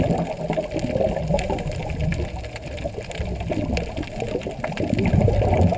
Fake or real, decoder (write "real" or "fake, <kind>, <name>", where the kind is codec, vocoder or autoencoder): real